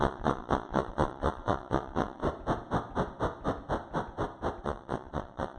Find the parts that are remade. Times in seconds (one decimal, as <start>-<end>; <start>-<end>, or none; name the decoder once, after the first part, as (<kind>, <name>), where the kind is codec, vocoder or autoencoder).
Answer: 0.0-2.2 (vocoder, WaveNeXt); 4.6-5.6